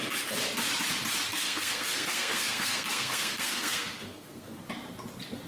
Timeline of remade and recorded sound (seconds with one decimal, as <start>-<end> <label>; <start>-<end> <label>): 0.0-1.3 recorded; 1.3-4.6 remade; 4.6-5.5 recorded